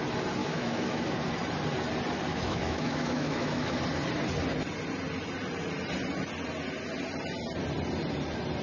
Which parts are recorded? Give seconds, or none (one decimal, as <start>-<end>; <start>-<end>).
0.0-0.4; 1.1-2.3; 3.8-8.6